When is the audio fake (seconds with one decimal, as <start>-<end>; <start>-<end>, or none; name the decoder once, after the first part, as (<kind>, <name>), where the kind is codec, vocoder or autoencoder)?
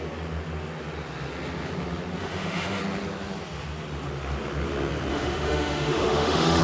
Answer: 2.2-2.8 (autoencoder, DAC-VAE); 5.1-6.6